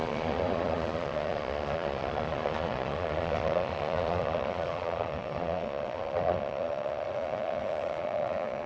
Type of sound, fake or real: fake